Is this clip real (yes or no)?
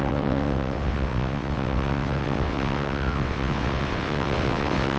no